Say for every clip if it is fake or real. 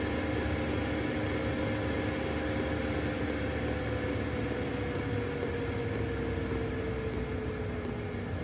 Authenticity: real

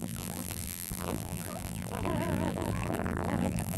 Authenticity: fake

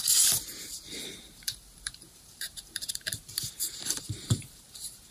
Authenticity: fake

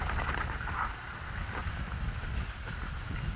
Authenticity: real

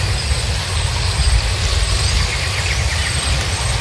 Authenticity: real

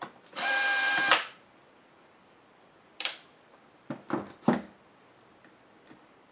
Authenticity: fake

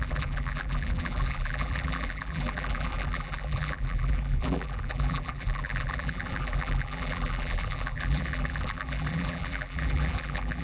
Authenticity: fake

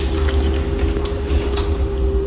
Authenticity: real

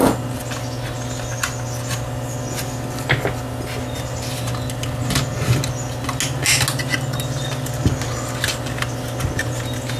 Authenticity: real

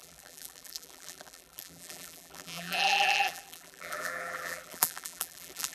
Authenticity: fake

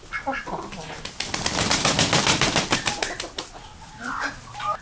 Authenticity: real